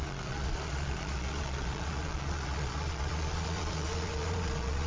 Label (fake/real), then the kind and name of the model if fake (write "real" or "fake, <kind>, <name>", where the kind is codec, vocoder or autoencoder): fake, vocoder, Vocos